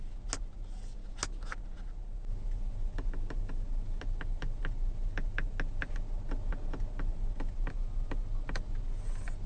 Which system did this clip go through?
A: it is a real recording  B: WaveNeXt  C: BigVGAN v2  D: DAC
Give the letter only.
A